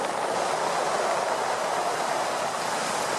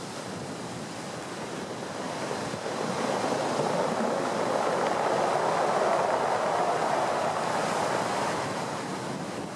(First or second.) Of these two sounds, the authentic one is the second